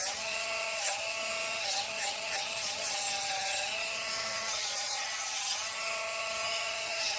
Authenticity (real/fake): fake